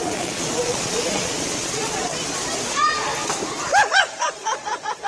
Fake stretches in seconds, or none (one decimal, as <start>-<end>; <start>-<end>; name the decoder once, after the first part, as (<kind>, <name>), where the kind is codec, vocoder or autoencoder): 0.0-2.1 (vocoder, Vocos); 2.7-3.1; 3.9-5.1